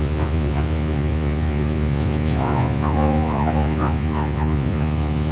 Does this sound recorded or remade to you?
remade